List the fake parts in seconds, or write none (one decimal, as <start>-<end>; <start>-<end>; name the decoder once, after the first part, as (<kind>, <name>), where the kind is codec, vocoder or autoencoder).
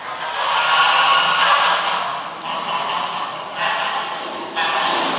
2.1-4.2 (vocoder, BigVGAN v2)